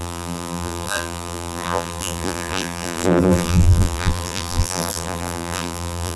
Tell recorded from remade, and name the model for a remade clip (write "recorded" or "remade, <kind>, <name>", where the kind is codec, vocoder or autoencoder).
remade, vocoder, BigVGAN v2